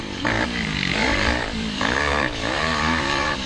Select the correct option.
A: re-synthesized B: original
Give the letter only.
A